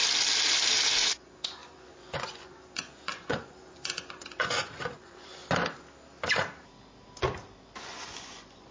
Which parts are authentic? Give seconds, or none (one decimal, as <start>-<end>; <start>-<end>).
0.0-1.1; 5.4-7.8